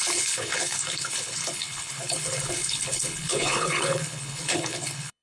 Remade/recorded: remade